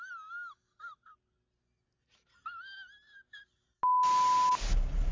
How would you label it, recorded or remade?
recorded